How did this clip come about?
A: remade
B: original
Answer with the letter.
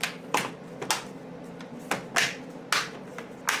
B